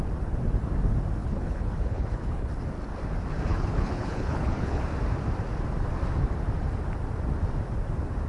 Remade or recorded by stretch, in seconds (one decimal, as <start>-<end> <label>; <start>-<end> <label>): 0.0-1.2 recorded; 1.2-2.5 remade; 2.5-3.5 recorded; 3.5-4.8 remade; 4.8-8.3 recorded